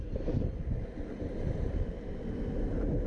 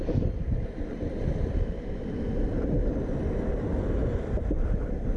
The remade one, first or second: second